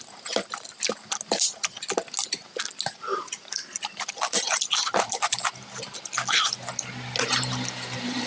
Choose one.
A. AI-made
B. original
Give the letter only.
B